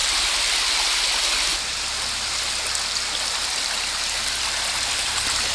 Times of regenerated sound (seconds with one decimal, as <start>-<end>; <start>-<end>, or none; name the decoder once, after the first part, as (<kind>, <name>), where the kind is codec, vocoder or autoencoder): 3.3-5.5 (vocoder, BigVGAN v2)